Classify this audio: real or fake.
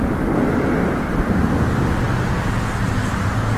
real